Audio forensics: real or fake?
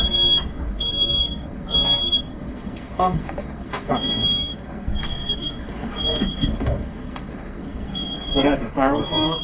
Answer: fake